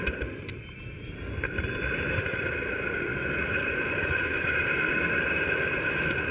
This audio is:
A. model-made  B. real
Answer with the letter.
B